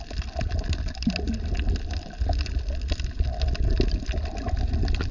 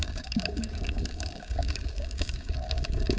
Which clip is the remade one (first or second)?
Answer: second